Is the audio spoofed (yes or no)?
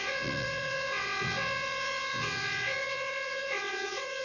yes